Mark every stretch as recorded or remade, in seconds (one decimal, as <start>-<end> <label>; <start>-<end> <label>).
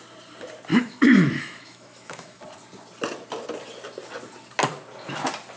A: 0.0-0.7 recorded; 0.7-2.4 remade; 2.4-5.6 recorded